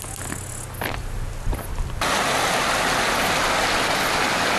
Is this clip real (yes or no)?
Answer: yes